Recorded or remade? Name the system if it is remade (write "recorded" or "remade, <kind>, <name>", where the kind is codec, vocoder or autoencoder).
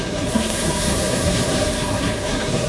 remade, codec, SNAC